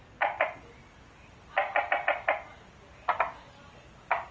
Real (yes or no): yes